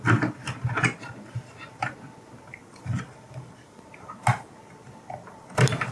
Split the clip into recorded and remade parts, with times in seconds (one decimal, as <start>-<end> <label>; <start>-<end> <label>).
0.0-0.8 recorded; 0.8-1.8 remade; 1.8-2.6 recorded; 2.6-4.6 remade; 4.6-5.9 recorded